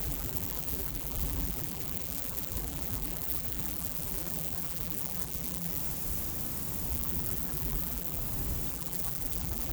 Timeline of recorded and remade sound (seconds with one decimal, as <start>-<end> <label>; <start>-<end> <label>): 0.0-5.8 remade; 5.8-6.9 recorded; 6.9-8.2 remade; 8.2-8.7 recorded; 8.7-9.7 remade